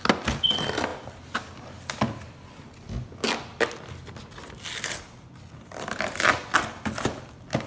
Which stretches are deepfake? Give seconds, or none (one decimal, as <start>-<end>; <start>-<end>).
none